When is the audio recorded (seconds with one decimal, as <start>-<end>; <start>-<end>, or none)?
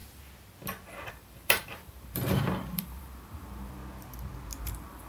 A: 0.0-1.1; 3.8-4.6